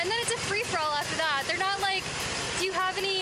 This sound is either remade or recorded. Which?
recorded